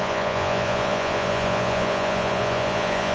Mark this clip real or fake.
fake